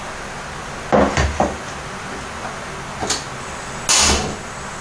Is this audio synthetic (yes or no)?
no